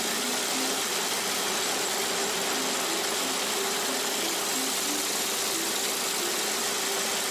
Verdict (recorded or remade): recorded